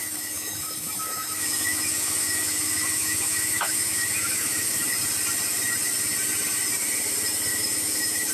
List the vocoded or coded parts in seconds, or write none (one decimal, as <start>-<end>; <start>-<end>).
0.0-4.8; 7.5-8.3